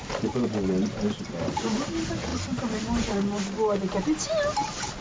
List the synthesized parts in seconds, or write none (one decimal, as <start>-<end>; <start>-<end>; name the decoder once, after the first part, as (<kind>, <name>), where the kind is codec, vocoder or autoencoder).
none